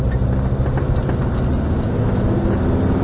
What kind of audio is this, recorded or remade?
recorded